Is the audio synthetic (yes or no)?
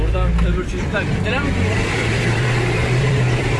yes